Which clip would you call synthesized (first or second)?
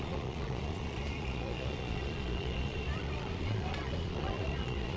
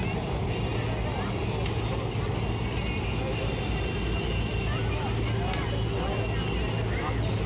first